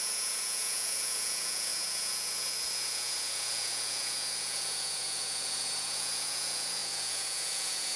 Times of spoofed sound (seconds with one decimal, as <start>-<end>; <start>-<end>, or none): 0.0-8.0